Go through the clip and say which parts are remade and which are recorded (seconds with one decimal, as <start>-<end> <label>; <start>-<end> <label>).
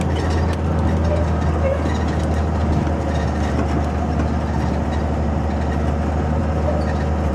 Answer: 0.0-7.3 recorded